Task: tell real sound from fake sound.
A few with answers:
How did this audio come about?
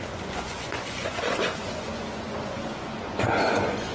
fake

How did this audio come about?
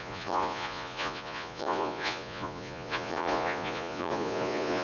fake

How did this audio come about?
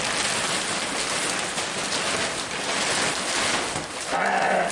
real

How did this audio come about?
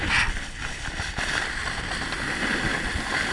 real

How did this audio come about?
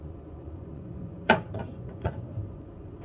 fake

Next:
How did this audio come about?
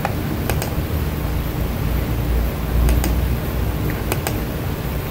real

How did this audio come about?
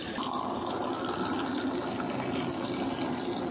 real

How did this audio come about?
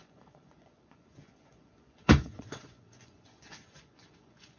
fake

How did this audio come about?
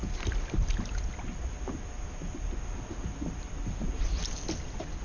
real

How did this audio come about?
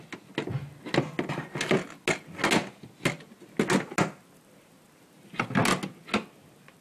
real